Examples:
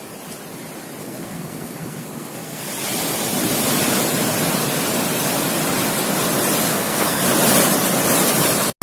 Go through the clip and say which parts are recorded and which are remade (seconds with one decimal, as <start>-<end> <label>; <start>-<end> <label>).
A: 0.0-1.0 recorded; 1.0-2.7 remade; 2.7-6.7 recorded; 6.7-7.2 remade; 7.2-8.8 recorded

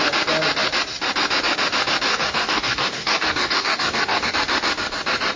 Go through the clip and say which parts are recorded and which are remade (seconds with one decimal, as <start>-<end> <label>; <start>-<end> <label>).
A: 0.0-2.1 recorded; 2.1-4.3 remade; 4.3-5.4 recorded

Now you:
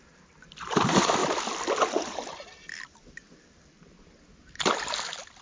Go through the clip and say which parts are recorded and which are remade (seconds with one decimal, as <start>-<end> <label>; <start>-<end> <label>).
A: 0.0-5.4 recorded

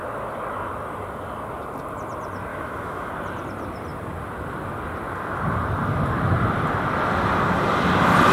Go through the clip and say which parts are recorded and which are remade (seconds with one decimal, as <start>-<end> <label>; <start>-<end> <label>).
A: 0.0-2.5 recorded; 2.5-3.1 remade; 3.1-8.3 recorded